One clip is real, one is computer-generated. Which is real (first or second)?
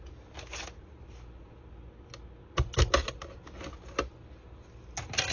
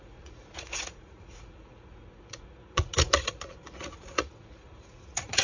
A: first